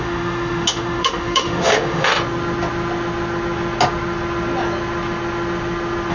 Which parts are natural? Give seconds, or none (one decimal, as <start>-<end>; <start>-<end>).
2.1-6.1